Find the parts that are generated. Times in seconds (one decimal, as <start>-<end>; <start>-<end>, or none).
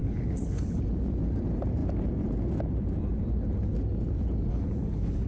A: 0.0-0.8; 4.5-5.3